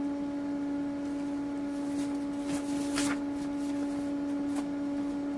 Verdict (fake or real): real